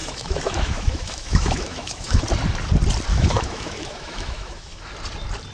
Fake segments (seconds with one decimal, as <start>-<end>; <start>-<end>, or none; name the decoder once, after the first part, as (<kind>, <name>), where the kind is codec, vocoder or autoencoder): 0.0-2.2 (autoencoder, DAC-VAE); 3.1-4.9